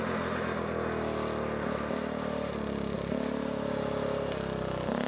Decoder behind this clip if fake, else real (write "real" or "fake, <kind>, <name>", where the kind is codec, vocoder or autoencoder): real